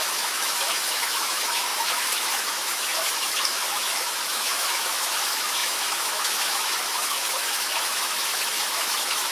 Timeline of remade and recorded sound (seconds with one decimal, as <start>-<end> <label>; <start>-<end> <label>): 0.0-9.3 remade